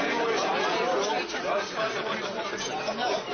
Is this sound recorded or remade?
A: remade